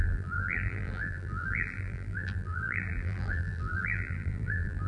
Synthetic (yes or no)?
yes